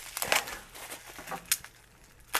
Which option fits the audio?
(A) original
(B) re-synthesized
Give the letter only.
A